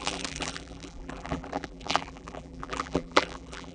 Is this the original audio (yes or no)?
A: no